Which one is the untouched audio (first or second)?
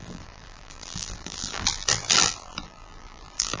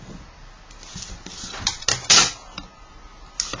second